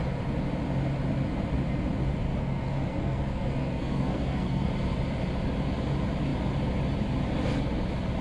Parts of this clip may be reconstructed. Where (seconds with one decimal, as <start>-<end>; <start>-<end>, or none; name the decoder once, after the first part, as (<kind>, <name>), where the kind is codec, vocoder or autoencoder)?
2.3-4.7 (codec, SNAC)